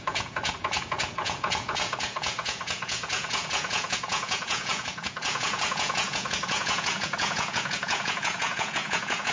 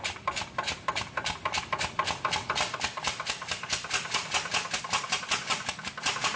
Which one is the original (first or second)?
second